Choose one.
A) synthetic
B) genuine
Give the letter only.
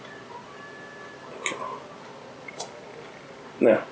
B